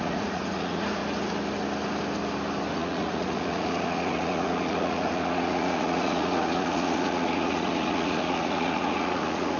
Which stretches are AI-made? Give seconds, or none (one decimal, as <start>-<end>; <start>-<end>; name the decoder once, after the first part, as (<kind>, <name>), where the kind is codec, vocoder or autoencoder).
0.0-1.0 (vocoder, Vocos); 2.7-9.6